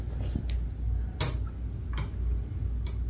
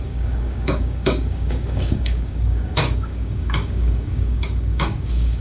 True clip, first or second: first